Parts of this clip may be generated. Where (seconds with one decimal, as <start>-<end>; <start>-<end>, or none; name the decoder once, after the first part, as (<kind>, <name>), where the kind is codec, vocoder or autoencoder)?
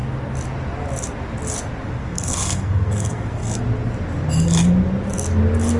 2.0-3.6 (codec, SNAC)